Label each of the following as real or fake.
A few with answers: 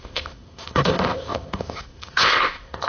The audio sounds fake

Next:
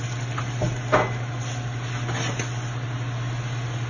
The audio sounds real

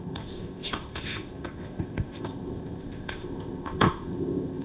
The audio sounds fake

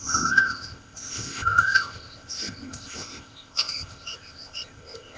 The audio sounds fake